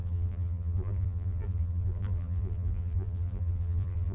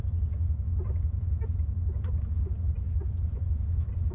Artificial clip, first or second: first